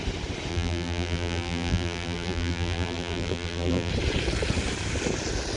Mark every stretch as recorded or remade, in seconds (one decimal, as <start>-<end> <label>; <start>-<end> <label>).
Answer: 0.0-0.5 recorded; 0.5-3.9 remade; 3.9-5.6 recorded